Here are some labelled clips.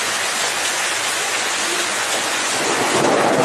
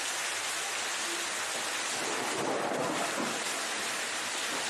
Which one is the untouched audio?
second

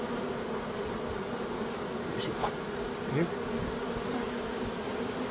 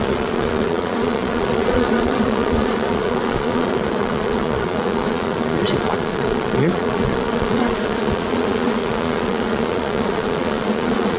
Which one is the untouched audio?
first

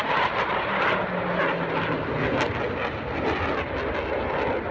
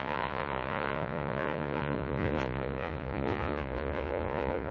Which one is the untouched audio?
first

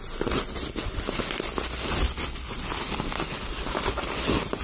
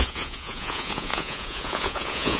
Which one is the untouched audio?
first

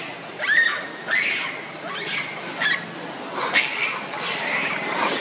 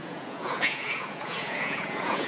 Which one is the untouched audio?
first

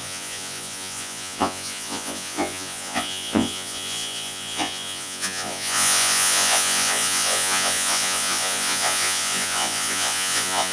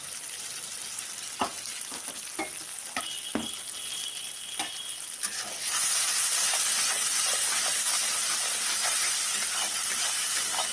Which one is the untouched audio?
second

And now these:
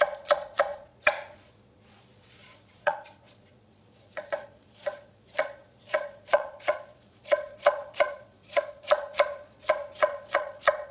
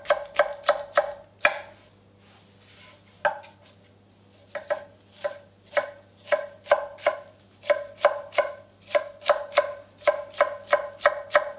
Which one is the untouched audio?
second